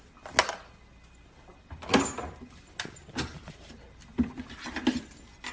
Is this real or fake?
real